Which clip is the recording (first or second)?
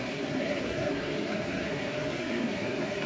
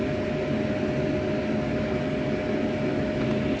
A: second